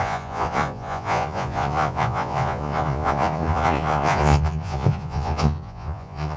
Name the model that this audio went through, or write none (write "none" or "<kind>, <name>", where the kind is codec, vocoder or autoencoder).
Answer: vocoder, Vocos